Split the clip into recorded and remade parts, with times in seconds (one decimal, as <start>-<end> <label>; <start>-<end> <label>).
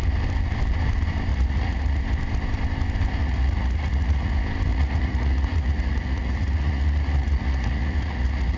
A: 0.0-1.3 recorded; 1.3-2.0 remade; 2.0-3.2 recorded; 3.2-4.3 remade; 4.3-4.7 recorded; 4.7-8.6 remade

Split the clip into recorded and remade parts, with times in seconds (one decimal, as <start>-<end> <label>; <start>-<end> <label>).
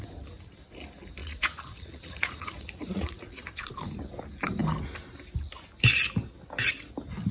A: 0.0-1.2 recorded; 1.2-3.7 remade; 3.7-7.3 recorded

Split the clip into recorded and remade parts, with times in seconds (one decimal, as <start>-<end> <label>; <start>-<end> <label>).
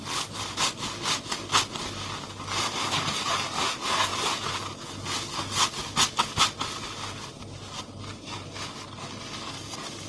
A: 0.0-10.1 recorded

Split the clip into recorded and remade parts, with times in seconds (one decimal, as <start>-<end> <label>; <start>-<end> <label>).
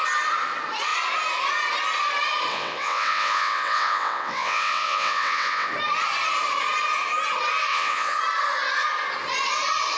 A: 0.0-2.5 recorded; 2.5-5.7 remade; 5.7-7.7 recorded; 7.7-8.2 remade; 8.2-10.0 recorded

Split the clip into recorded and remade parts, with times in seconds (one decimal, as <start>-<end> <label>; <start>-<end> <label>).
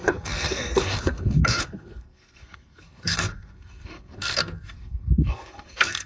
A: 0.0-6.1 remade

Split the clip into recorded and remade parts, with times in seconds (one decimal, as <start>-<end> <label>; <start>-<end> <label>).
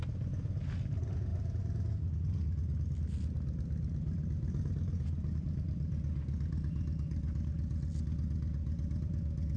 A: 0.0-9.6 recorded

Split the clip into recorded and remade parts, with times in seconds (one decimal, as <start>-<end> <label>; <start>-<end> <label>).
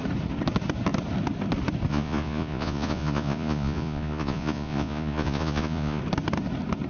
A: 0.0-1.9 recorded; 1.9-6.0 remade; 6.0-6.9 recorded